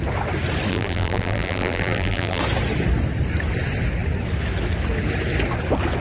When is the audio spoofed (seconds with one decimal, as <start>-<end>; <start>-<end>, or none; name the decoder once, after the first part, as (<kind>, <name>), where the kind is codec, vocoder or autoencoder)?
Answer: 0.7-2.4 (vocoder, BigVGAN v2)